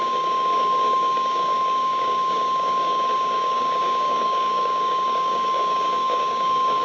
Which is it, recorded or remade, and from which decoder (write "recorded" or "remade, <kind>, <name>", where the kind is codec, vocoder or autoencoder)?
remade, codec, DAC